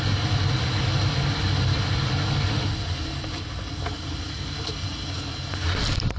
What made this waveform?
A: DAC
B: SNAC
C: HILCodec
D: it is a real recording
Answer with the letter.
D